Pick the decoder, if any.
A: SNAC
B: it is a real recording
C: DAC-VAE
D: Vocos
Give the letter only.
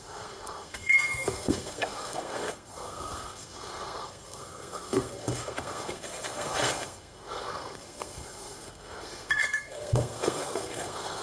A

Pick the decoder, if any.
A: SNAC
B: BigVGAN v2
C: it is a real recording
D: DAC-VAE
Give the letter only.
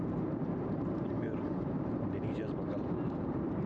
B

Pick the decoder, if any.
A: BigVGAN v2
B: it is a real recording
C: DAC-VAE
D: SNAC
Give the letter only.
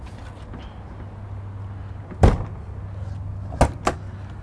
B